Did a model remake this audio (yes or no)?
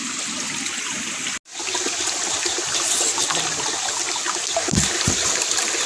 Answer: no